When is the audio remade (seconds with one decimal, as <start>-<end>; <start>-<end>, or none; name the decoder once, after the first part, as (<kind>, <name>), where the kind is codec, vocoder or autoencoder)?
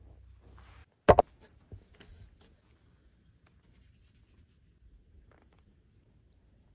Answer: none